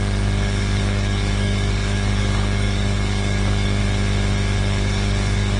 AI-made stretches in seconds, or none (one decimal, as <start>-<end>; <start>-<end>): 0.0-3.8; 4.6-5.6